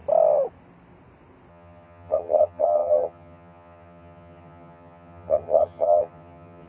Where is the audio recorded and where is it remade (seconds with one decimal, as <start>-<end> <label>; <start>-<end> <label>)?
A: 0.0-1.5 recorded; 1.5-6.7 remade

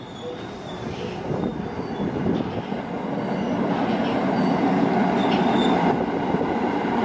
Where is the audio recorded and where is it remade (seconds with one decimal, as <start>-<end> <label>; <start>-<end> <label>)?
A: 0.0-7.0 recorded

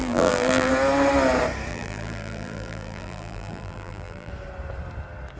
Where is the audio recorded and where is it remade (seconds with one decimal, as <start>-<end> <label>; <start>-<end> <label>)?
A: 0.0-0.7 remade; 0.7-1.7 recorded; 1.7-4.3 remade; 4.3-5.4 recorded

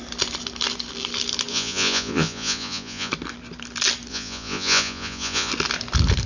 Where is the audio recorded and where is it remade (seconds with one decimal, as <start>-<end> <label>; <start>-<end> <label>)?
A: 0.0-1.5 recorded; 1.5-3.1 remade; 3.1-4.1 recorded; 4.1-5.5 remade; 5.5-6.3 recorded

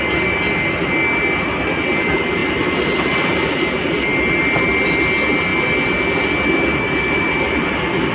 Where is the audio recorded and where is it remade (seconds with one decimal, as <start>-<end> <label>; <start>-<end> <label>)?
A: 0.0-8.1 recorded

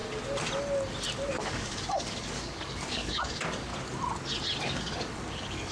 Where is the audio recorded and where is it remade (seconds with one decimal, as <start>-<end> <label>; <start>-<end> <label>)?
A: 0.0-1.4 recorded; 1.4-3.7 remade; 3.7-4.6 recorded; 4.6-5.7 remade